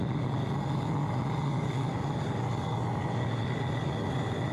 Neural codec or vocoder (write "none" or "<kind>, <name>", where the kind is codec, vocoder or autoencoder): none